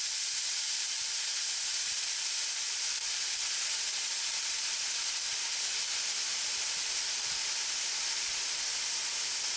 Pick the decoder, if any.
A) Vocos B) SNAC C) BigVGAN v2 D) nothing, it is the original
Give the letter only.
D